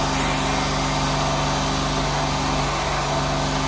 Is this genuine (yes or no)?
yes